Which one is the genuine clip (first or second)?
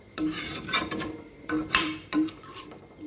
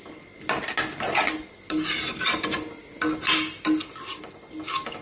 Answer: second